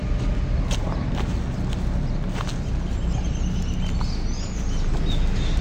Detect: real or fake real